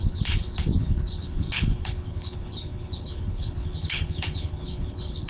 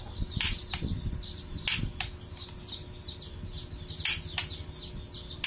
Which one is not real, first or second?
first